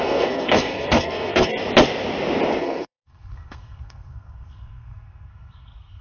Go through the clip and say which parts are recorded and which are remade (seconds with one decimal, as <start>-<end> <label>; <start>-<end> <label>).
0.0-1.5 remade; 1.5-2.6 recorded; 2.6-6.0 remade